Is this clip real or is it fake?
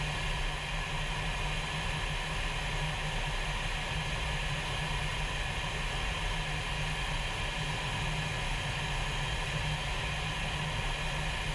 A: real